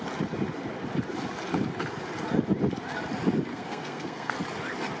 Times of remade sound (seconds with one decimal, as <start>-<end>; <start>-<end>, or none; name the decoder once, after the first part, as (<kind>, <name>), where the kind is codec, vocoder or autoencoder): 3.5-4.3 (codec, SNAC)